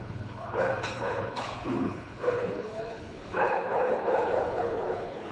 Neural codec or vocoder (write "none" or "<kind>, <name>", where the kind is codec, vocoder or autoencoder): codec, HILCodec